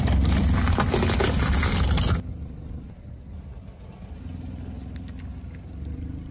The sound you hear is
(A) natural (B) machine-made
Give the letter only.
A